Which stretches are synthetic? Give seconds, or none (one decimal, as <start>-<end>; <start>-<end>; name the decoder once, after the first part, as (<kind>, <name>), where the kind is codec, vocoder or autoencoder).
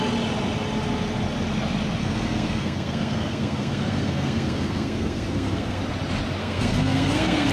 2.0-5.8 (codec, SNAC); 6.4-7.5